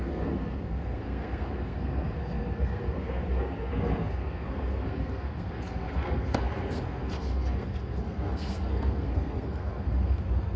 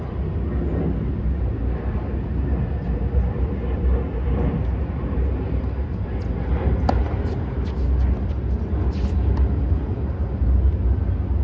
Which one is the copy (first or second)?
first